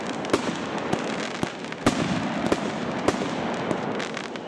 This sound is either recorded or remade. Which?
recorded